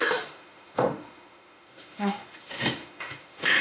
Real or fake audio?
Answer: fake